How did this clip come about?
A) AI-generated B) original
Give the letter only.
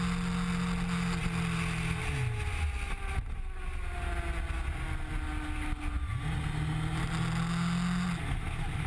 B